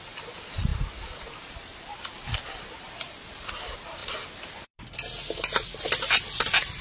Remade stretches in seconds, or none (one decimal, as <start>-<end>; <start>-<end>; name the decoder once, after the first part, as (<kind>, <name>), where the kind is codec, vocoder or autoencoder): none